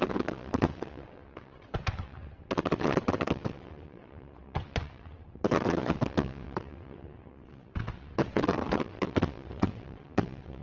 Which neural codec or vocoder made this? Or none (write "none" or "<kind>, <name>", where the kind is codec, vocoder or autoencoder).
vocoder, WaveNeXt